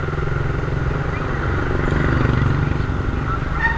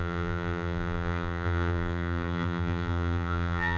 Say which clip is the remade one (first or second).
second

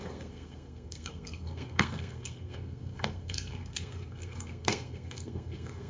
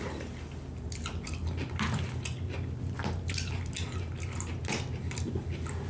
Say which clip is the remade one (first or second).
first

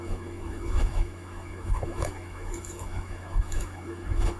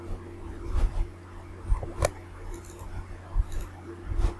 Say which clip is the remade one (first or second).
first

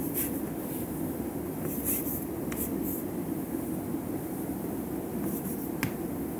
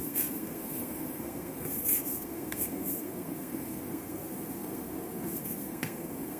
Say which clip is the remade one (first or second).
second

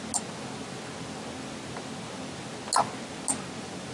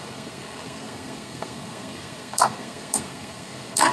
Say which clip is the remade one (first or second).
second